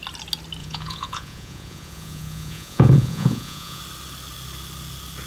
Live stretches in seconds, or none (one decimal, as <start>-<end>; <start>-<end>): 0.0-0.6; 3.8-5.3